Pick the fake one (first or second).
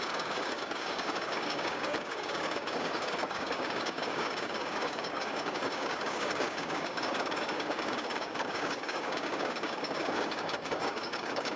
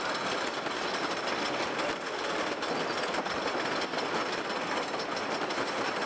first